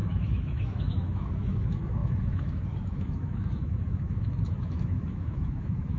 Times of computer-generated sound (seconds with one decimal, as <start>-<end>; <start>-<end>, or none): 0.0-6.0